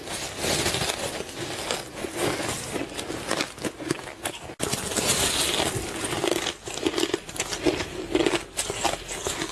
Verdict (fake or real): real